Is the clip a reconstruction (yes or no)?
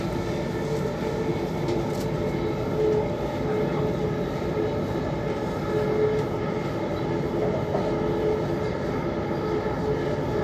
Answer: no